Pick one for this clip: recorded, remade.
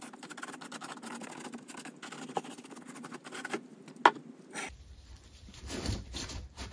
recorded